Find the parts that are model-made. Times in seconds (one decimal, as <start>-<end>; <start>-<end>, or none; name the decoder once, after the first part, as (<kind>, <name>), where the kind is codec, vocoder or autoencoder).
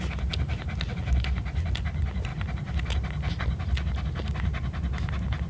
none